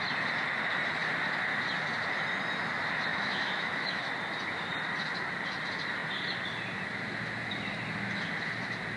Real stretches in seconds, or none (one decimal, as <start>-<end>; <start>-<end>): 0.0-3.1; 4.1-9.0